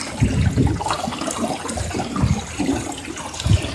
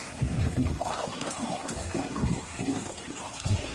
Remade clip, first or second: second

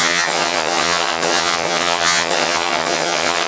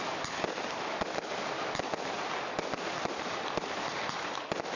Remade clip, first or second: first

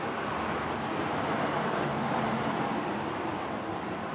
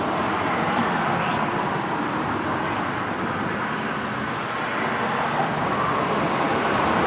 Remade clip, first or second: second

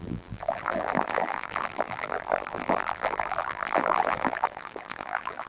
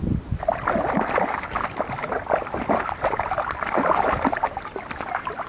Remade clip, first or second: first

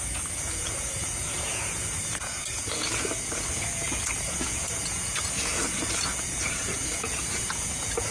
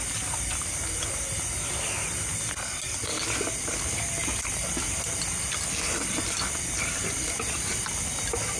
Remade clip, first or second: first